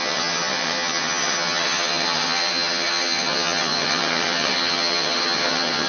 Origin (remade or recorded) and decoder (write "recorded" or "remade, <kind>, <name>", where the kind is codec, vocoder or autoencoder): remade, vocoder, HiFi-GAN